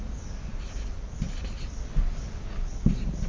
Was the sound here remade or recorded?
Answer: recorded